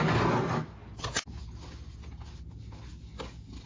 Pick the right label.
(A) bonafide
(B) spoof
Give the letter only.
A